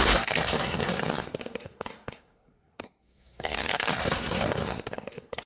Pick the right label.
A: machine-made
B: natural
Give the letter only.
A